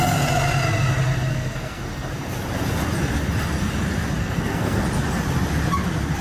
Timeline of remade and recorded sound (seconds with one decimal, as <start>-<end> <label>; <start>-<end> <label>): 0.0-1.3 recorded; 1.3-2.1 remade; 2.1-4.2 recorded; 4.2-4.8 remade; 4.8-6.2 recorded